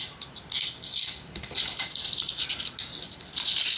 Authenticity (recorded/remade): recorded